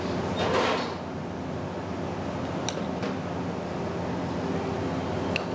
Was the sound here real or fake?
real